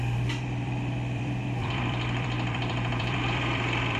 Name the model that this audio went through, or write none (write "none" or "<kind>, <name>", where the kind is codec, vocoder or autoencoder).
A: vocoder, BigVGAN v2